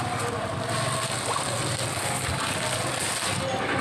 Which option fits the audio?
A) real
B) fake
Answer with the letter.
A